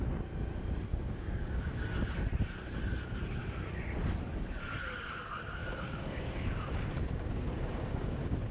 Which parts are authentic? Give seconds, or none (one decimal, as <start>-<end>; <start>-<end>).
0.0-0.9; 1.8-5.6